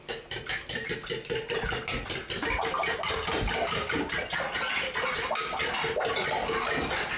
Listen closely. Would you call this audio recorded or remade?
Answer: recorded